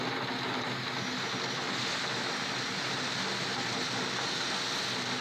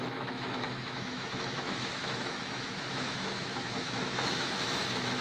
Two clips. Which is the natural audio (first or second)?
first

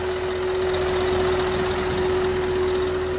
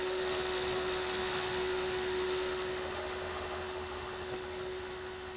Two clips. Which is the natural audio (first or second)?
first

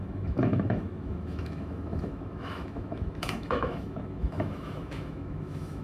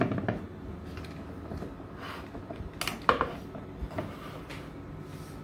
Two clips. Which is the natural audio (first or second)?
second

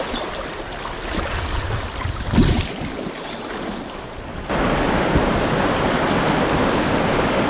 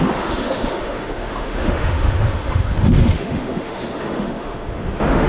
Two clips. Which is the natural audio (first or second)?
first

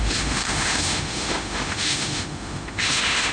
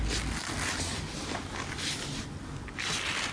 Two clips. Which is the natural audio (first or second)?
second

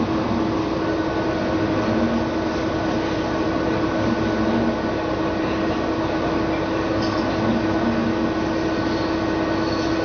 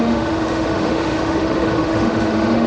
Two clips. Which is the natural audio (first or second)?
first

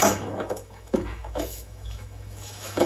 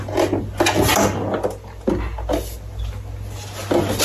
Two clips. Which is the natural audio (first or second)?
second